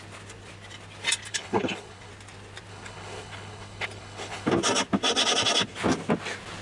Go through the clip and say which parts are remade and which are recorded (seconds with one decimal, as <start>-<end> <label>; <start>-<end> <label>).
0.0-1.3 recorded; 1.3-2.1 remade; 2.1-2.7 recorded; 2.7-4.5 remade; 4.5-6.6 recorded